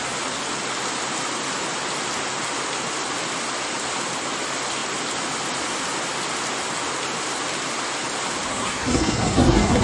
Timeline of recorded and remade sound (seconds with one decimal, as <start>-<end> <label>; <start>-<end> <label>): 0.0-8.5 recorded; 8.5-9.8 remade